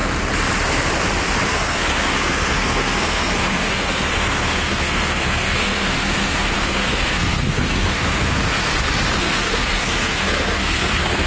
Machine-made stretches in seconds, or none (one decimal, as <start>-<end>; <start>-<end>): 1.5-8.7; 9.2-11.3